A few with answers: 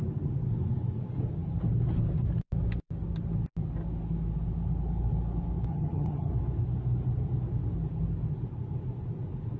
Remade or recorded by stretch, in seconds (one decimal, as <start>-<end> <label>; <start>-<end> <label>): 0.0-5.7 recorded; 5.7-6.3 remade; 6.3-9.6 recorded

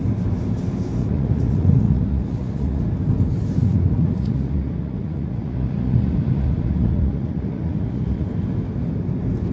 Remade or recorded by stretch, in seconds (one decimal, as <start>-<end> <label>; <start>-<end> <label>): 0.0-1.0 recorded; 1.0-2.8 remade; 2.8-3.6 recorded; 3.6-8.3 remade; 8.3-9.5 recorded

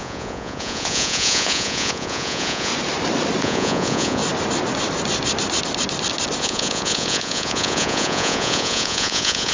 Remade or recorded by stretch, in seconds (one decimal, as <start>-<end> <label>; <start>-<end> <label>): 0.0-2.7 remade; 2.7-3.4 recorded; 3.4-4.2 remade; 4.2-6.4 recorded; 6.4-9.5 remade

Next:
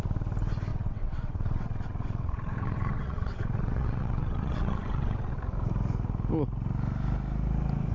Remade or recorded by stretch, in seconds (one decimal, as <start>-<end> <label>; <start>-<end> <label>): 0.0-0.7 recorded; 0.7-5.4 remade; 5.4-7.9 recorded